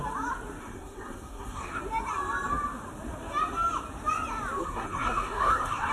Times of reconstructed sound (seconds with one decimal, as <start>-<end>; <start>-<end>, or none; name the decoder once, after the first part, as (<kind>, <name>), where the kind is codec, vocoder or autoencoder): 0.6-1.8 (codec, SNAC); 4.6-5.9